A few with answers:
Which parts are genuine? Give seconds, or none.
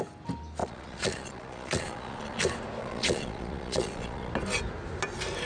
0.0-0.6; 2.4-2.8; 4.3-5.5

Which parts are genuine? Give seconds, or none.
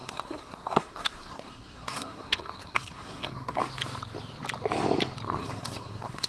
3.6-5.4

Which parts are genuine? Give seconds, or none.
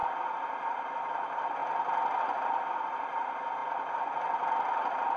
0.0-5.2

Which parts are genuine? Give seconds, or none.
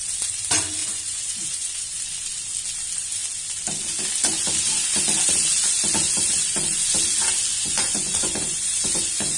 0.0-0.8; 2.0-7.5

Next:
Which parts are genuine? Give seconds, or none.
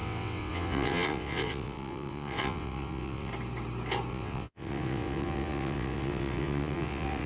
3.3-4.1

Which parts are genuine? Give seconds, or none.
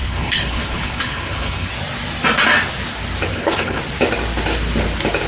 1.7-3.3; 3.8-5.3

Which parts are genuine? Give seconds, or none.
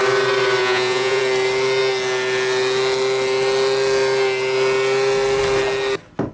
0.0-0.6; 1.2-6.3